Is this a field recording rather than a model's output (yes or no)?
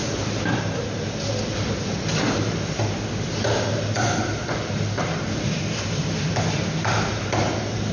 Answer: yes